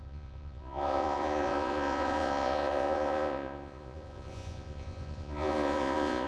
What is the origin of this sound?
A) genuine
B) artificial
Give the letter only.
B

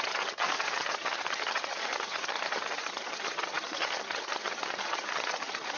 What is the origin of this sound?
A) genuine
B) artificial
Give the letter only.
B